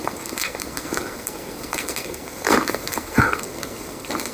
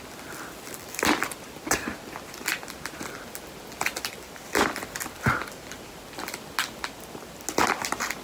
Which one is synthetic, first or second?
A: first